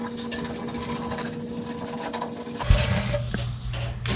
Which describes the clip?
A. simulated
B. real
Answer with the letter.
B